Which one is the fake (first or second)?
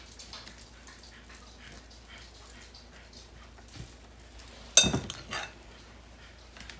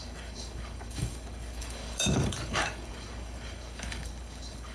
second